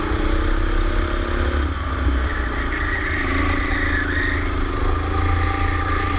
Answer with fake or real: real